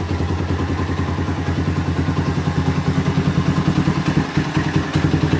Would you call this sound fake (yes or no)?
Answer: no